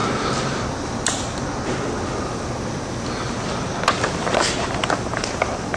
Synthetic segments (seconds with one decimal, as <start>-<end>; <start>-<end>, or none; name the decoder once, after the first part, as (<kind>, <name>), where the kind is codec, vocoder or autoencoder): none